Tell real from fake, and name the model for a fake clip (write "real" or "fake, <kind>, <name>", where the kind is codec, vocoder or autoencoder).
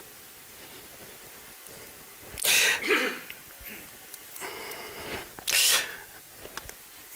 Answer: real